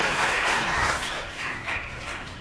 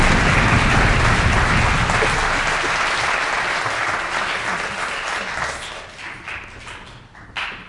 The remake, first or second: first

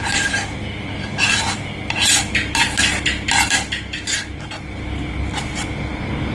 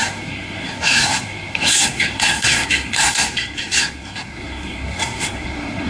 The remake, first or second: second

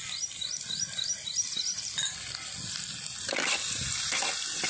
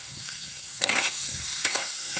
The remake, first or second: second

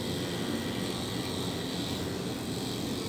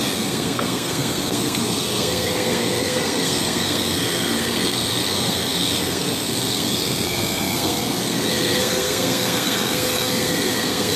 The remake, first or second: second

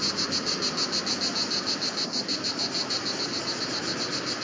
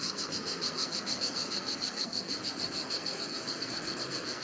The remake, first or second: second